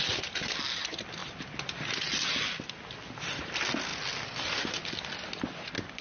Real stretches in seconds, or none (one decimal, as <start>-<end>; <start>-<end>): 0.0-6.0